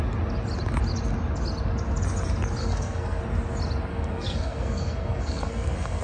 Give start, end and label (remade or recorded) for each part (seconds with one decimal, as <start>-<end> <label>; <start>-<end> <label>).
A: 0.0-2.6 recorded; 2.6-3.2 remade; 3.2-3.9 recorded; 3.9-6.0 remade